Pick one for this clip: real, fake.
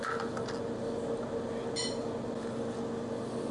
real